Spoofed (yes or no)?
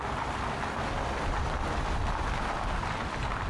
no